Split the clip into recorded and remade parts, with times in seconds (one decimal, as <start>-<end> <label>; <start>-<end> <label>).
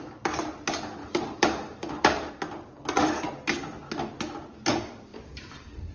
0.0-1.0 recorded; 1.0-2.3 remade; 2.3-5.1 recorded; 5.1-5.9 remade